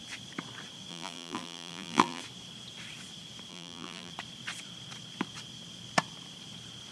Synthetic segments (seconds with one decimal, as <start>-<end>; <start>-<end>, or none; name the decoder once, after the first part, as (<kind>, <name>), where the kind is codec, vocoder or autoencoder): 0.9-2.2 (vocoder, BigVGAN v2); 3.5-4.1